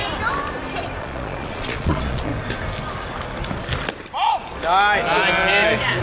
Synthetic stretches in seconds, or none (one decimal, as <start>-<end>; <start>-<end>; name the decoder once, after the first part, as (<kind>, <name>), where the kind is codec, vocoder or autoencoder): 1.0-2.3 (vocoder, Vocos)